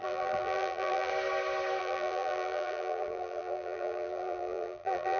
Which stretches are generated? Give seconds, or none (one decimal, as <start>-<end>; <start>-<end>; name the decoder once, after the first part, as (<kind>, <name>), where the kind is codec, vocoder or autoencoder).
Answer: 0.0-1.1 (vocoder, BigVGAN v2); 1.8-5.2